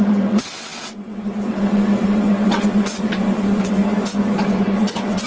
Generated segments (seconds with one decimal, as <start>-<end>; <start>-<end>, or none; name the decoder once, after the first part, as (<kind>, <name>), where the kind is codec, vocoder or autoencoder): 0.0-3.8 (vocoder, WaveNeXt); 4.5-5.3